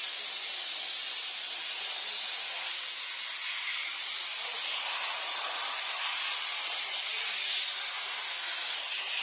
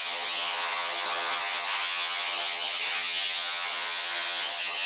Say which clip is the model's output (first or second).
second